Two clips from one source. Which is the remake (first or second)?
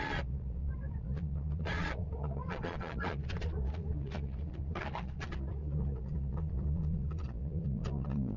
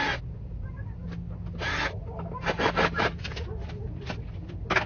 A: first